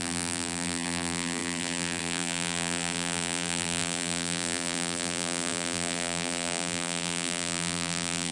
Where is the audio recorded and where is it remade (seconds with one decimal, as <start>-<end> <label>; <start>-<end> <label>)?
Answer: 0.0-8.3 remade